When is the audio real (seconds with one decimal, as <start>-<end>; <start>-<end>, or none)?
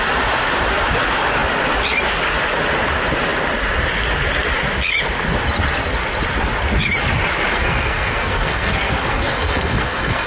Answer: 0.0-7.5